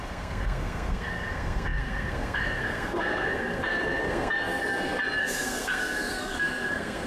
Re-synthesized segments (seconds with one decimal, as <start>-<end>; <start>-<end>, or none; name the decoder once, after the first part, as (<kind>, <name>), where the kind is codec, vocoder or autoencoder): 0.0-4.6 (codec, SNAC); 5.2-7.1